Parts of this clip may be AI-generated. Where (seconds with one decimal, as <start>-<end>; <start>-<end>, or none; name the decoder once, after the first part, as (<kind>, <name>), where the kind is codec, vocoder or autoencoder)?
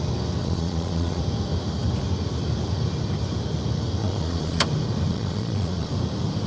0.4-1.2 (vocoder, Vocos); 4.0-4.6; 5.1-5.9